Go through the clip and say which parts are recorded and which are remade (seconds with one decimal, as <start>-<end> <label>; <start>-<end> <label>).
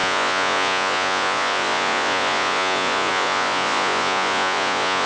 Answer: 0.0-5.1 remade